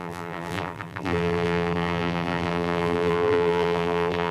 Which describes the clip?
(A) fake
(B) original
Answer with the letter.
A